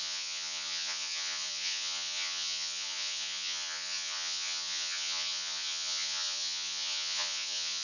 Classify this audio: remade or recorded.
remade